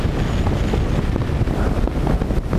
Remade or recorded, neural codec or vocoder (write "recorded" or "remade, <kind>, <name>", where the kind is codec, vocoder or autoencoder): recorded